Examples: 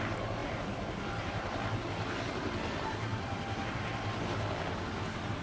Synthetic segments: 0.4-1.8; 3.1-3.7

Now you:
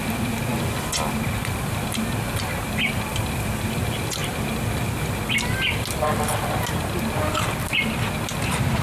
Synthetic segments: none

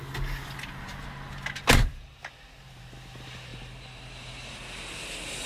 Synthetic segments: none

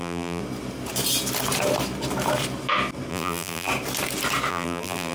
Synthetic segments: 0.0-0.4; 3.1-3.7; 4.5-5.1

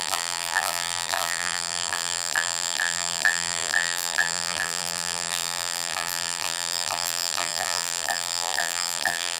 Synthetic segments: 0.0-9.4

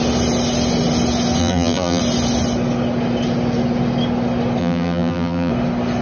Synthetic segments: 1.4-2.0; 4.6-5.5